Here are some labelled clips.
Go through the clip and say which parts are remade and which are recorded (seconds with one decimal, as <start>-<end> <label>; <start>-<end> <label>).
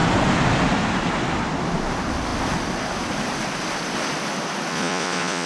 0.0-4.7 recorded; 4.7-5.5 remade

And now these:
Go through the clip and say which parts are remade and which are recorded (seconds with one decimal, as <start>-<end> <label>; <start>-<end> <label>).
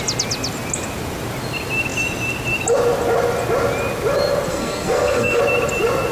0.0-4.5 recorded; 4.5-5.4 remade; 5.4-6.1 recorded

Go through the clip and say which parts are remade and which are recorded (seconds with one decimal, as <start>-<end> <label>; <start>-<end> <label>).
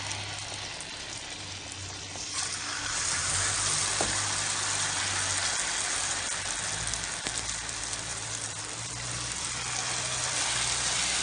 0.0-8.1 recorded; 8.1-8.6 remade; 8.6-11.2 recorded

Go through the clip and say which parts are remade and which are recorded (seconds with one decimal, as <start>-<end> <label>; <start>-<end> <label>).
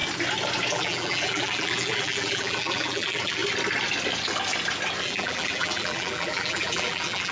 0.0-0.7 recorded; 0.7-3.4 remade; 3.4-5.0 recorded; 5.0-7.3 remade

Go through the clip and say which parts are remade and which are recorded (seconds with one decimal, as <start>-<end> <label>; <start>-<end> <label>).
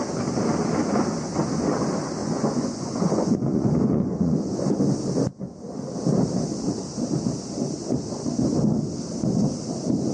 0.0-2.2 recorded; 2.2-4.8 remade; 4.8-10.1 recorded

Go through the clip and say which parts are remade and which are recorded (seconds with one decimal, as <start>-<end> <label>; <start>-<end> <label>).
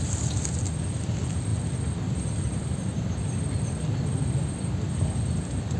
0.0-5.8 recorded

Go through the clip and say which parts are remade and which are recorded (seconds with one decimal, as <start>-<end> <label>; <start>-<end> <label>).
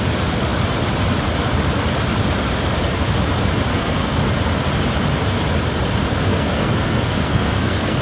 0.0-3.7 recorded; 3.7-4.2 remade; 4.2-6.3 recorded; 6.3-8.0 remade